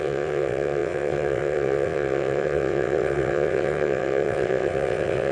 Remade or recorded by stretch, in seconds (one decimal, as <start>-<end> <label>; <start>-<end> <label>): 0.0-5.3 remade